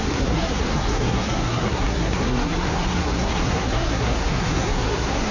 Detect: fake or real fake